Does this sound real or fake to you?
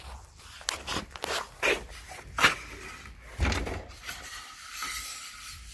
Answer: real